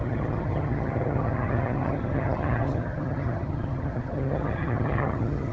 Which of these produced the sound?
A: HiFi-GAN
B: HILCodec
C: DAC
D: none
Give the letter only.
A